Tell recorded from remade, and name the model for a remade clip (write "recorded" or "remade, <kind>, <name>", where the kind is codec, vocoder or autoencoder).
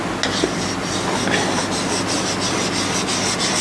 recorded